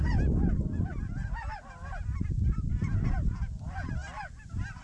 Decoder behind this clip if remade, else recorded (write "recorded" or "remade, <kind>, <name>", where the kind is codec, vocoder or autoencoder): remade, vocoder, BigVGAN v2